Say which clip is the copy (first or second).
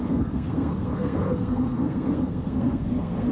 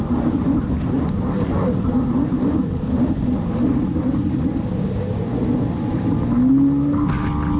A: first